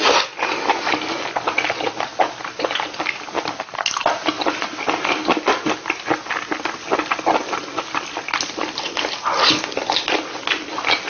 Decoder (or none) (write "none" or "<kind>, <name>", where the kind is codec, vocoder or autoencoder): none